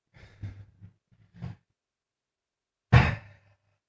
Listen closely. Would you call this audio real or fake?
real